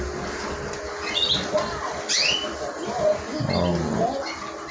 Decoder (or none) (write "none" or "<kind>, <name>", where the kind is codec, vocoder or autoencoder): none